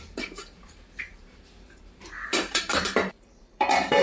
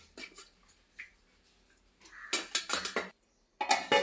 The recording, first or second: second